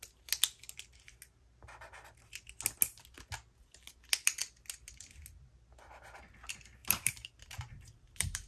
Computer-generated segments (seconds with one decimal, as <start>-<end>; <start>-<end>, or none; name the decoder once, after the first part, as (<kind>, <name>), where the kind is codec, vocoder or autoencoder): 6.8-8.5 (vocoder, BigVGAN v2)